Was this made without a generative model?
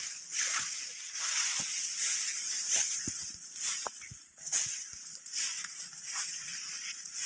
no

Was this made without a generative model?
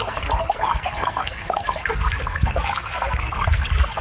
no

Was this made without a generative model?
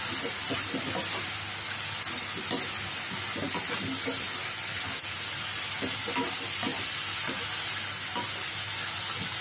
yes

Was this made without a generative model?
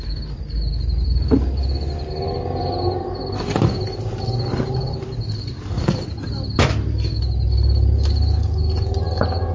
yes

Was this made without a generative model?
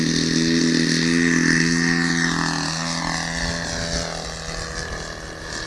yes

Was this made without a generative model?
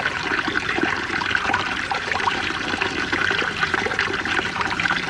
no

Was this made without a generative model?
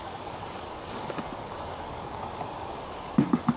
no